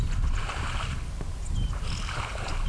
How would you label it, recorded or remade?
recorded